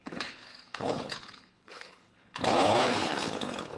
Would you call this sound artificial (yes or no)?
yes